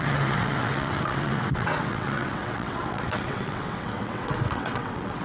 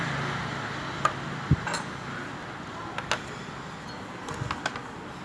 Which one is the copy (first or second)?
first